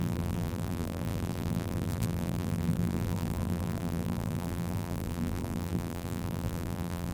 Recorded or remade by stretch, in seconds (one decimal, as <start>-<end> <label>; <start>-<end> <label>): 0.0-7.1 remade